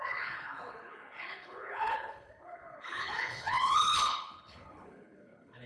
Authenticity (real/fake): fake